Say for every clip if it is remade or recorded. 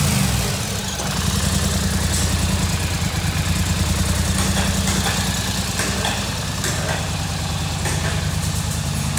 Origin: recorded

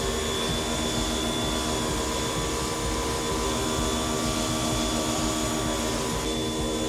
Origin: recorded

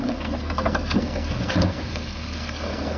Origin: remade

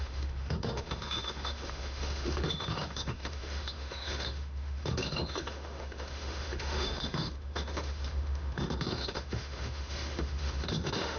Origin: remade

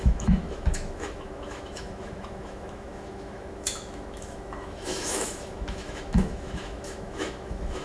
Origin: remade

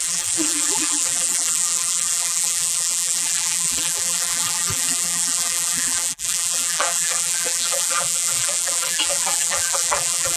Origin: remade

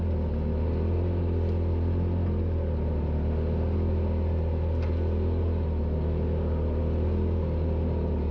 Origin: recorded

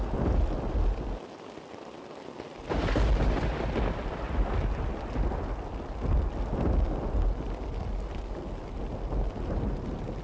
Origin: recorded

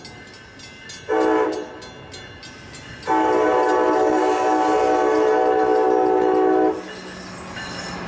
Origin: recorded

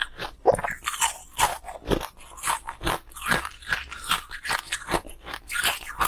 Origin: recorded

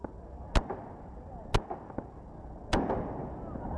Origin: recorded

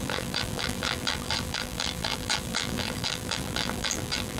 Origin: remade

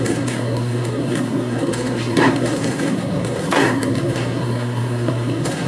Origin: remade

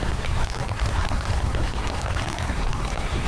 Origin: remade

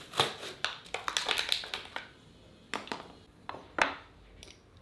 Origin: recorded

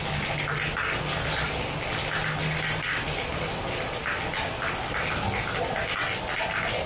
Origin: recorded